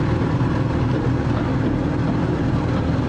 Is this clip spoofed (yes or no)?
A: yes